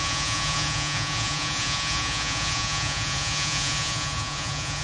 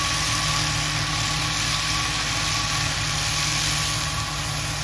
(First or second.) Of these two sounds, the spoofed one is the first